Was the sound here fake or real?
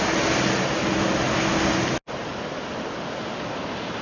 real